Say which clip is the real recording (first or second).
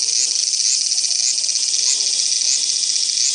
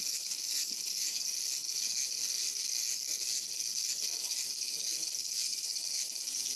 first